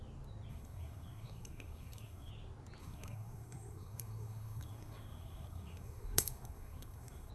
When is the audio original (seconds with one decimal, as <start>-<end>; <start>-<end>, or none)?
0.0-0.5; 2.3-2.8